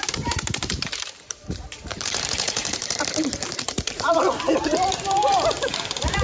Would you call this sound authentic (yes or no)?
no